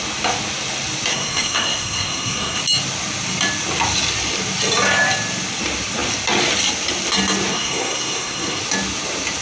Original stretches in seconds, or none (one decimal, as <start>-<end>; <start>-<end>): 0.0-1.1; 2.6-7.5; 8.6-9.4